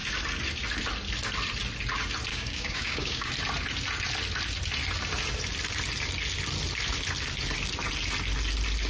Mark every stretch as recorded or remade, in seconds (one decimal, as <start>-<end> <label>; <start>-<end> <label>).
0.0-2.3 recorded; 2.3-3.3 remade; 3.3-8.9 recorded